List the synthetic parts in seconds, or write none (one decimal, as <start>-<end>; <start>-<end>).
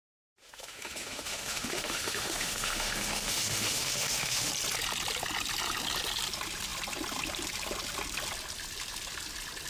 0.4-4.5